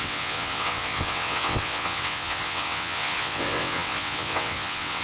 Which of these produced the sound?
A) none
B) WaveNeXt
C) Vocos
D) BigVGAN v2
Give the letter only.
B